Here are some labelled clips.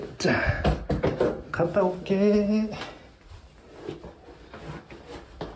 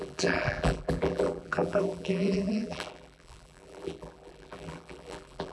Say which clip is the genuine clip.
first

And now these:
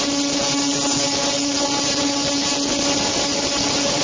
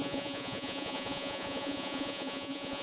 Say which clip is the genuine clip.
first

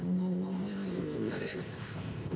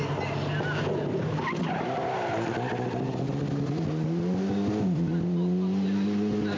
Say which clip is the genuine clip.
second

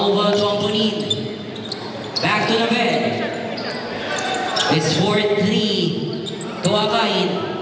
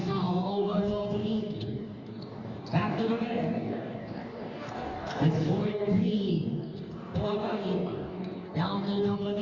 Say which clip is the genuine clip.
first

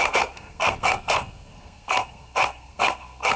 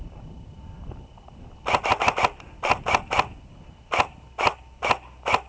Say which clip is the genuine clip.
second